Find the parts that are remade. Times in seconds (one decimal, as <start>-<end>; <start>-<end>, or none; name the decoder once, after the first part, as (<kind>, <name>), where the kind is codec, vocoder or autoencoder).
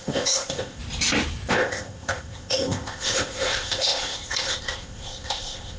0.0-0.8 (codec, ZipCodec); 1.5-5.8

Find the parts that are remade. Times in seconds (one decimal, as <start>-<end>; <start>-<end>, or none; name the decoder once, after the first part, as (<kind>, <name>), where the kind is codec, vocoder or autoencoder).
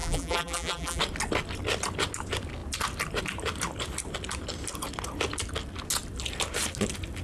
0.0-1.0 (vocoder, BigVGAN v2)